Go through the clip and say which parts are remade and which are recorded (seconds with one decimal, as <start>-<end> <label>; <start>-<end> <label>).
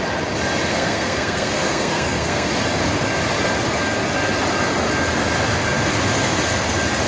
0.0-0.7 recorded; 0.7-2.5 remade; 2.5-7.1 recorded